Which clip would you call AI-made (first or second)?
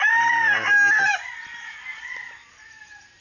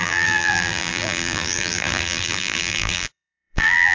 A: second